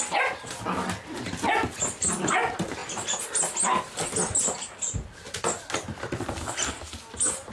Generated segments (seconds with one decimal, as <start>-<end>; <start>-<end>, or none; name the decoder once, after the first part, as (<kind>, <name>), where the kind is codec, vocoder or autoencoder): none